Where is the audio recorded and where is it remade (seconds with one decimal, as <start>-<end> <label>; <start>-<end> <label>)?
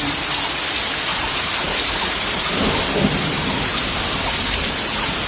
0.0-1.1 recorded; 1.1-2.7 remade; 2.7-5.3 recorded